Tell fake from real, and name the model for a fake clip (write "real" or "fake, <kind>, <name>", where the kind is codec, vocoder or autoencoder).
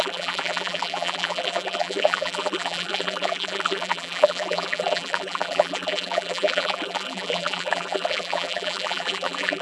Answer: fake, vocoder, BigVGAN v2